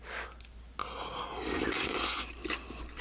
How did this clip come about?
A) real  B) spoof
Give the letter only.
A